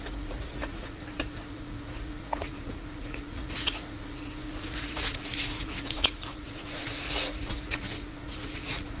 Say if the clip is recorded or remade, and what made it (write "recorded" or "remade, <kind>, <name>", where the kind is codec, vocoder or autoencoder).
remade, vocoder, Vocos